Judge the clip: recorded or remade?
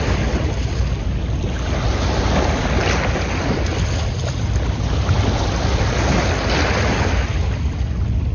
recorded